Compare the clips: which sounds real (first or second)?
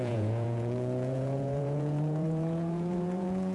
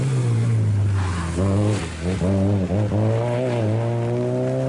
second